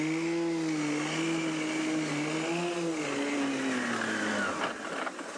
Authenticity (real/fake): real